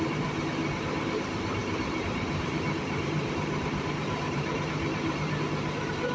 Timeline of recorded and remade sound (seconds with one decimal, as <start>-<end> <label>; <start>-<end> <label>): 0.0-1.6 recorded; 1.6-5.3 remade; 5.3-6.1 recorded